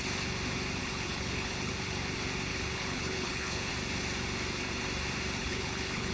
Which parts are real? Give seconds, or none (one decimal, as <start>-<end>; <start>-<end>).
0.0-0.8; 1.7-2.5; 3.7-5.4